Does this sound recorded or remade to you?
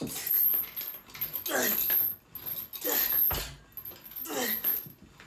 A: recorded